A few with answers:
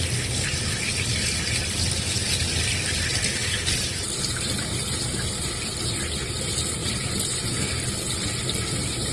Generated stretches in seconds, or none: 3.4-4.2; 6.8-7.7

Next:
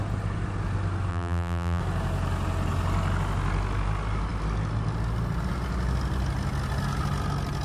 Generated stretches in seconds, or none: 1.1-1.8

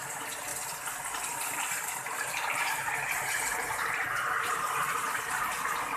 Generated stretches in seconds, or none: 0.0-0.5; 2.5-6.0

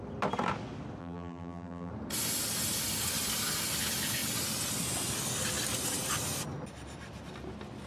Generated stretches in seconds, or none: 1.0-1.9

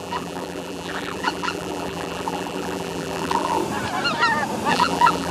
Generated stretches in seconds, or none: 0.0-3.6; 4.7-5.3

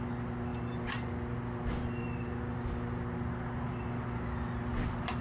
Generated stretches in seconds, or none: none